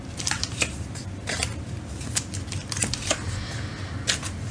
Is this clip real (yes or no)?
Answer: yes